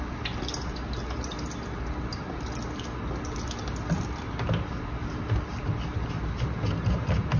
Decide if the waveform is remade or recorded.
recorded